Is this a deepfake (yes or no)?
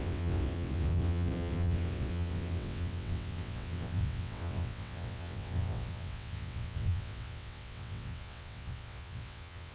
yes